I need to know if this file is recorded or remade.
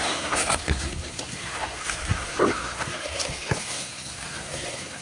remade